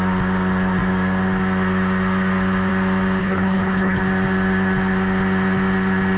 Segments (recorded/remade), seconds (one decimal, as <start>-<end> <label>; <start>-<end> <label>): 0.0-3.2 recorded; 3.2-4.0 remade; 4.0-6.2 recorded